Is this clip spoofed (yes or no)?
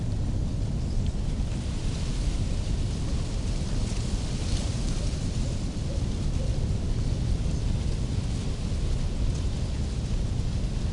no